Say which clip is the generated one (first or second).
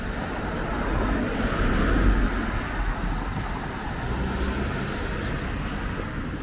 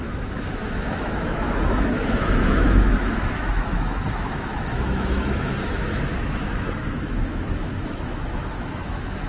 second